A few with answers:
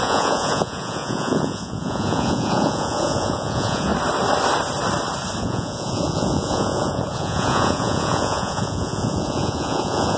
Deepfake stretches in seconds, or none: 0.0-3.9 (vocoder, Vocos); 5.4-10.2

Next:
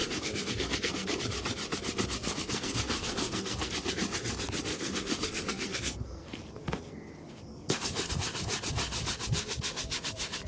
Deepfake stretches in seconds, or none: 0.0-1.2 (codec, SNAC); 2.2-3.7; 4.7-8.1

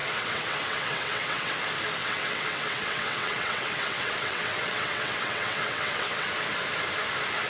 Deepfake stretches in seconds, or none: 0.0-1.5 (vocoder, WaveNeXt); 2.0-6.3

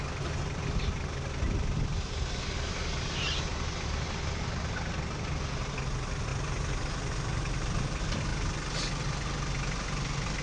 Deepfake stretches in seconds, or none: none

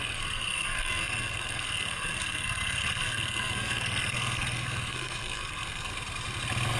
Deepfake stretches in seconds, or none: 0.0-5.9 (codec, SNAC)

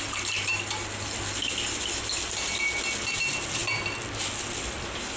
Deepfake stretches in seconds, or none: none

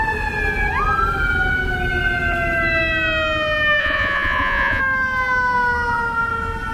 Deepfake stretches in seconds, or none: 3.8-4.8 (vocoder, Vocos)